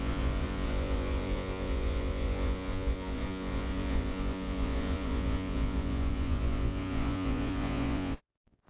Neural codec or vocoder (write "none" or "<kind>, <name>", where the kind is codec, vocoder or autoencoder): vocoder, Vocos